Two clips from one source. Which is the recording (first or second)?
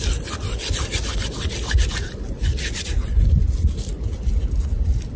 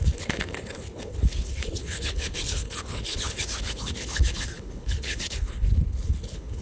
first